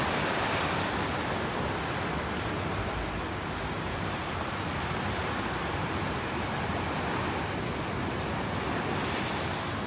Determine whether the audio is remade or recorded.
recorded